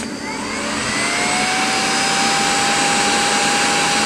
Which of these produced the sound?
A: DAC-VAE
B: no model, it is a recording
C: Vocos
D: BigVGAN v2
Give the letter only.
B